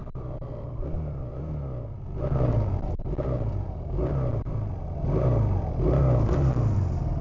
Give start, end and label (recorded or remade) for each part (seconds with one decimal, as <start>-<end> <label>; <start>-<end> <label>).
0.0-1.4 remade; 1.4-4.3 recorded; 4.3-5.0 remade; 5.0-7.2 recorded